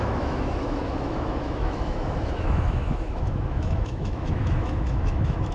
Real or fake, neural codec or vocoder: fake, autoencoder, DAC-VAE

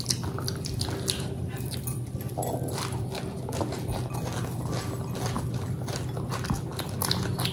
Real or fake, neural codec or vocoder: real